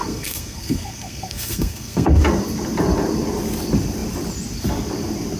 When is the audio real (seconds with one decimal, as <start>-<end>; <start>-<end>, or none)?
2.2-5.4